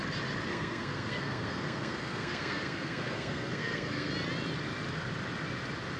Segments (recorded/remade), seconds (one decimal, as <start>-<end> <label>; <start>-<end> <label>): 0.0-0.5 recorded; 0.5-4.1 remade; 4.1-6.0 recorded